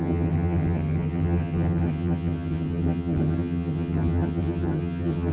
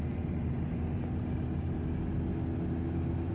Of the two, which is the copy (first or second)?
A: first